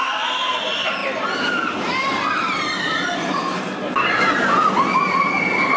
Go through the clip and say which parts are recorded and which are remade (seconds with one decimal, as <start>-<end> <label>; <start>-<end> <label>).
0.0-5.8 recorded